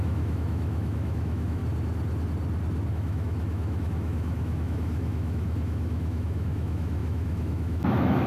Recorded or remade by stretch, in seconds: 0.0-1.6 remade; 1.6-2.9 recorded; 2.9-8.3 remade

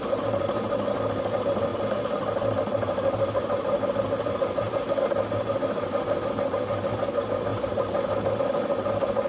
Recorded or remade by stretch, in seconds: 0.0-9.3 recorded